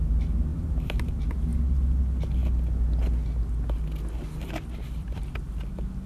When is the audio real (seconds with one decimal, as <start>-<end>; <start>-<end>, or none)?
0.0-0.5; 1.1-6.1